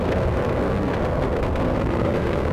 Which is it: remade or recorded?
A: remade